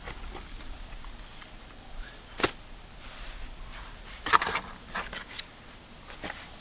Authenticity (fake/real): real